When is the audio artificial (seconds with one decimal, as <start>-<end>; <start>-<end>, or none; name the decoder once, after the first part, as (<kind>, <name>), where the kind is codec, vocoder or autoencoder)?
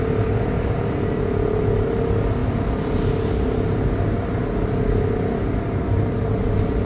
none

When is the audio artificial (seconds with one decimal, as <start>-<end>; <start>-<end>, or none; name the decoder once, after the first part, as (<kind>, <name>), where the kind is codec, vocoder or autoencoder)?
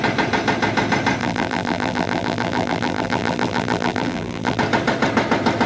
1.2-4.6 (vocoder, BigVGAN v2)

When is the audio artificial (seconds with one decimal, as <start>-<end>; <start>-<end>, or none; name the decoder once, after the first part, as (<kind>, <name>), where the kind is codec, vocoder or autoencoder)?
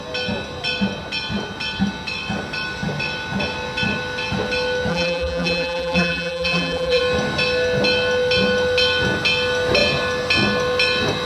4.9-7.0 (vocoder, BigVGAN v2)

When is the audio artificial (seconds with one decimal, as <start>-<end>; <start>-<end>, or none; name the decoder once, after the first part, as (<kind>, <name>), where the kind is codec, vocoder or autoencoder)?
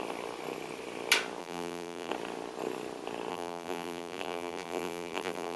1.4-2.1 (vocoder, BigVGAN v2); 3.3-5.6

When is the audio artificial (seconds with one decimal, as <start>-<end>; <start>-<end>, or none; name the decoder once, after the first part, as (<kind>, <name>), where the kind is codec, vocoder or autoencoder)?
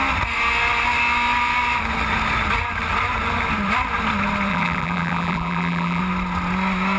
4.5-6.0 (vocoder, BigVGAN v2)